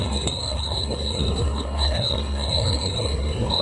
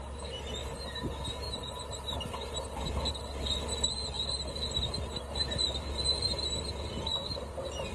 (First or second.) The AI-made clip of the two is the first